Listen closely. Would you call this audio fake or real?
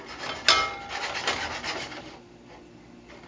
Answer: real